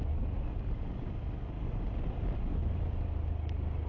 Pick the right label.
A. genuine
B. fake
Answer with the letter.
A